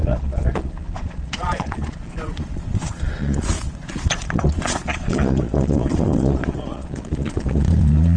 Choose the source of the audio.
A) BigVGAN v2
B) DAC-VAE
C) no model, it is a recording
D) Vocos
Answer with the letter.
D